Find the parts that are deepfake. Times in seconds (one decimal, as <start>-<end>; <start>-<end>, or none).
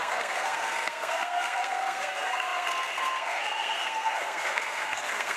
0.0-5.4